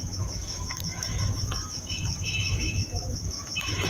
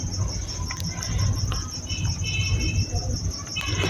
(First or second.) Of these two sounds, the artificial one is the first